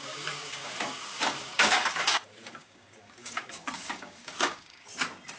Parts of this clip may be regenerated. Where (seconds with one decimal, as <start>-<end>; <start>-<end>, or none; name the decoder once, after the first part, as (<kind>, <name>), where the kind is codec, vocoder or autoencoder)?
0.0-4.9 (codec, DAC)